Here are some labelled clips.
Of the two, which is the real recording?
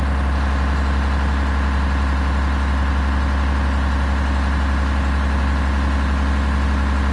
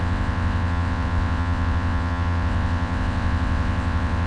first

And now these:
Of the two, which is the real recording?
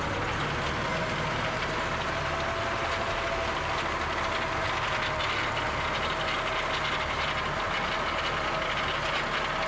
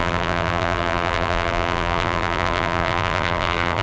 first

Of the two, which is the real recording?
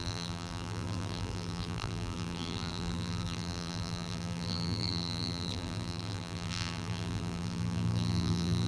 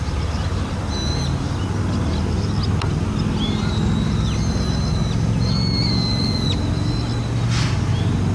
second